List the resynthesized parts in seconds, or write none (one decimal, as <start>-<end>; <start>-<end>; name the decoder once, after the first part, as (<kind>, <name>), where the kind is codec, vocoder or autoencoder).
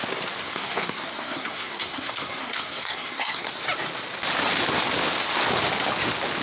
0.4-3.6 (codec, SNAC)